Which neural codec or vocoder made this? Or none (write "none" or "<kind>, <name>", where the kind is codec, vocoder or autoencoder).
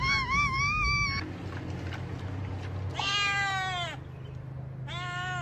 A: none